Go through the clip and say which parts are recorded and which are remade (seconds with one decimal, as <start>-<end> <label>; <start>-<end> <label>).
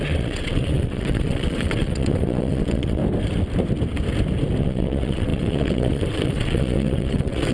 0.0-3.0 remade; 3.0-4.6 recorded; 4.6-7.5 remade